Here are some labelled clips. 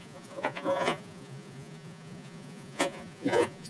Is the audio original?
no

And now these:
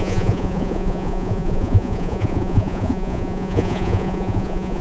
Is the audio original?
no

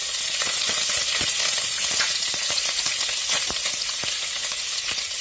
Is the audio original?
no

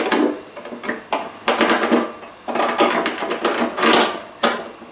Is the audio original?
yes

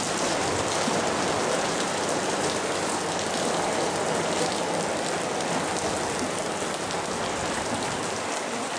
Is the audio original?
yes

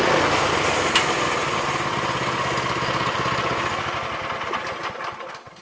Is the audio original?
yes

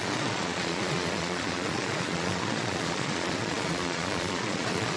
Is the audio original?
no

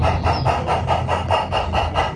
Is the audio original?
yes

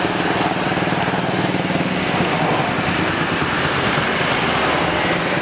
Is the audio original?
yes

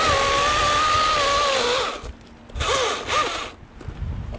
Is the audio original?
yes